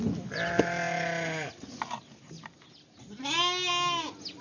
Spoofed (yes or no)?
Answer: no